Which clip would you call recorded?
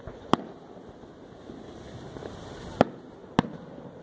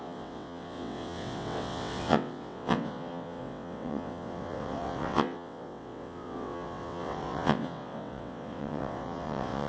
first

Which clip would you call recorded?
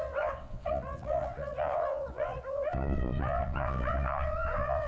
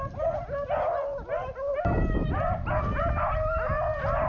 second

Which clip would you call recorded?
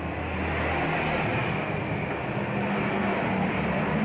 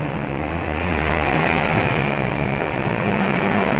first